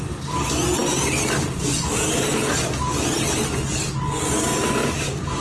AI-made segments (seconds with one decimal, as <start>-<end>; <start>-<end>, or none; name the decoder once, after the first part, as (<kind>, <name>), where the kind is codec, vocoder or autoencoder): none